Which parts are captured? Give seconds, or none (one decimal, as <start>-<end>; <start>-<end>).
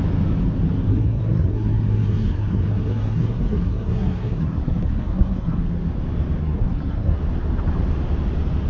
0.0-0.9; 5.6-6.4; 7.2-8.7